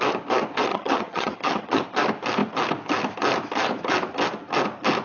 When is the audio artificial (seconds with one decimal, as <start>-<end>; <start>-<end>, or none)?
0.7-1.8